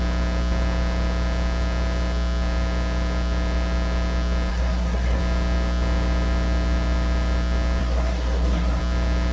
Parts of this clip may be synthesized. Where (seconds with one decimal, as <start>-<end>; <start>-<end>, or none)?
4.5-5.2; 7.8-8.8